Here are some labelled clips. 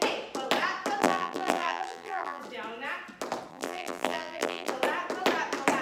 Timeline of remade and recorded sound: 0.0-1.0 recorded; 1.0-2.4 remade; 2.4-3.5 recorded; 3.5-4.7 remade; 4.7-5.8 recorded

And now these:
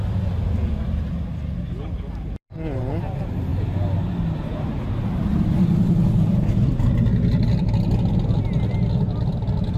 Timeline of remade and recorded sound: 0.0-9.8 recorded

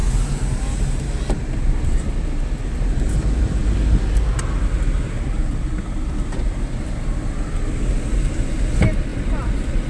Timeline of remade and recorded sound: 0.0-1.8 recorded; 1.8-3.6 remade; 3.6-4.5 recorded; 4.5-9.9 remade

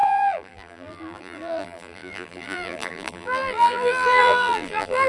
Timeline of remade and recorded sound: 0.0-5.1 remade

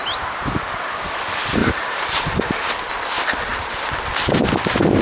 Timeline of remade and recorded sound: 0.0-1.6 recorded; 1.6-2.9 remade; 2.9-3.5 recorded; 3.5-4.1 remade; 4.1-5.0 recorded

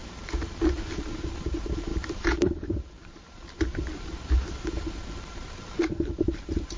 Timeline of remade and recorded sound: 0.0-6.8 remade

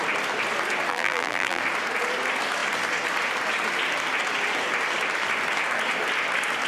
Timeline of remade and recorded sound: 0.0-0.9 recorded; 0.9-1.6 remade; 1.6-6.7 recorded